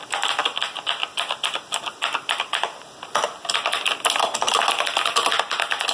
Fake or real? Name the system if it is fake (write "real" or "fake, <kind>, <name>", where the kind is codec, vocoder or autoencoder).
real